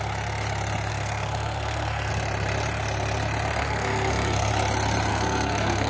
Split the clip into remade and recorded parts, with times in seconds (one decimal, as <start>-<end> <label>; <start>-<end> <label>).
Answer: 0.0-0.9 recorded; 0.9-2.1 remade; 2.1-3.6 recorded; 3.6-4.5 remade; 4.5-5.1 recorded; 5.1-5.9 remade